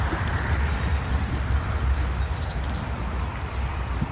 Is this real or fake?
fake